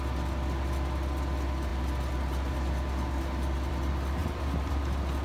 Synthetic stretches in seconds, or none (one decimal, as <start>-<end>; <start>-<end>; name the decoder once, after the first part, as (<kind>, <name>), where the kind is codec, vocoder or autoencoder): 4.2-4.7 (vocoder, BigVGAN v2)